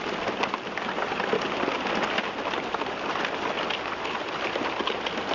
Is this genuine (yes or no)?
yes